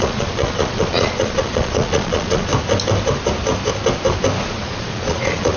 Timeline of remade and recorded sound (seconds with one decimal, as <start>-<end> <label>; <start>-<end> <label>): 0.0-2.5 remade; 2.5-4.4 recorded; 4.4-5.6 remade